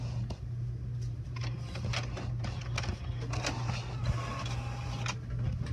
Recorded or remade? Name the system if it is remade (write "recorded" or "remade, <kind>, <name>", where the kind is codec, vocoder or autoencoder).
recorded